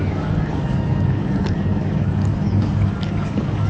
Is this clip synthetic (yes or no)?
yes